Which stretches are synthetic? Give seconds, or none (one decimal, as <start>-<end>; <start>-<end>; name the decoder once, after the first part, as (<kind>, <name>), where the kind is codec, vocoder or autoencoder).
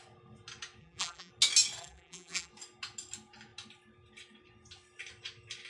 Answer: 0.8-1.3 (vocoder, BigVGAN v2); 1.8-2.5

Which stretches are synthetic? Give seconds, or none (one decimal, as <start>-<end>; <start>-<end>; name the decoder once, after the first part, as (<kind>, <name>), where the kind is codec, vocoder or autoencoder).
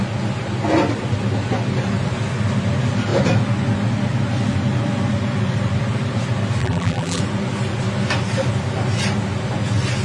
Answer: 6.6-7.2 (vocoder, BigVGAN v2)